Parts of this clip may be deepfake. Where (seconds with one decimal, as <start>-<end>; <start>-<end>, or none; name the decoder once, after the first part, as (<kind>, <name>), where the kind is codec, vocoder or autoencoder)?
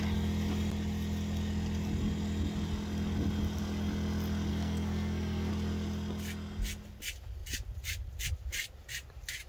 4.5-5.5 (codec, SNAC)